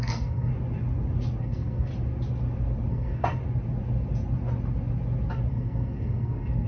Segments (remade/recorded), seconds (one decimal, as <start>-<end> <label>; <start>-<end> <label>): 0.0-0.5 remade; 0.5-1.4 recorded; 1.4-1.9 remade; 1.9-2.9 recorded; 2.9-3.4 remade; 3.4-5.5 recorded; 5.5-6.7 remade